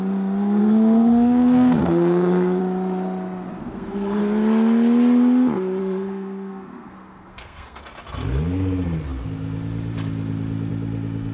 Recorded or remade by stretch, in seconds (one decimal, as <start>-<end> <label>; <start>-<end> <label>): 0.0-0.6 recorded; 0.6-2.6 remade; 2.6-3.6 recorded; 3.6-4.2 remade; 4.2-5.8 recorded; 5.8-7.8 remade; 7.8-11.3 recorded